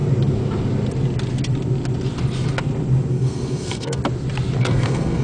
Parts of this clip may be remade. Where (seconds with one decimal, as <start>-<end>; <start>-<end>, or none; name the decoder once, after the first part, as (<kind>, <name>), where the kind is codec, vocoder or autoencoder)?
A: 3.1-4.0 (codec, SNAC); 4.6-5.2